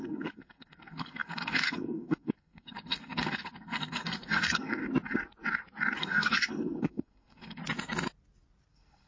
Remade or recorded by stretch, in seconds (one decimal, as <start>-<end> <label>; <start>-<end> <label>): 0.0-4.8 remade; 4.8-6.0 recorded; 6.0-7.6 remade; 7.6-8.7 recorded; 8.7-9.1 remade